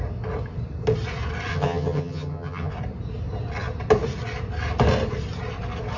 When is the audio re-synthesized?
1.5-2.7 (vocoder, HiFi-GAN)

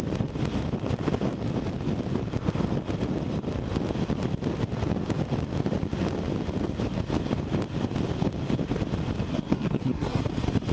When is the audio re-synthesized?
9.3-10.2 (codec, SNAC)

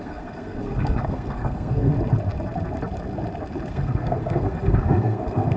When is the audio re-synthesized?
0.0-1.9 (codec, SNAC); 3.7-5.6

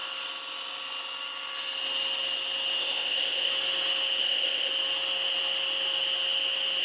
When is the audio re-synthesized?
2.8-3.5 (codec, ZipCodec); 4.2-4.7